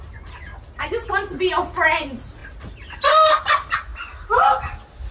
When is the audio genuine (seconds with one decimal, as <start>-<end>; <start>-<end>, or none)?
0.0-5.1